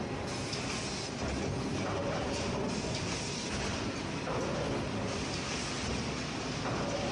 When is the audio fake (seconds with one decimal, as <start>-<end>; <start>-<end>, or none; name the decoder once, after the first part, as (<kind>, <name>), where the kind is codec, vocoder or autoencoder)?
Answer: 2.0-5.9 (vocoder, BigVGAN v2)